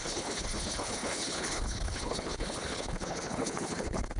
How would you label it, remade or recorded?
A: remade